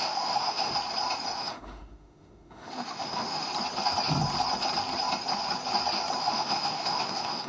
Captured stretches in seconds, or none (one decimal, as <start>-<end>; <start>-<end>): 0.7-1.4; 3.5-6.2